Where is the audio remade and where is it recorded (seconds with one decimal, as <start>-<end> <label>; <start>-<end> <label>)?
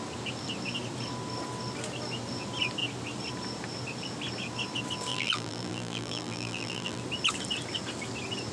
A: 0.0-5.1 recorded; 5.1-7.0 remade; 7.0-8.5 recorded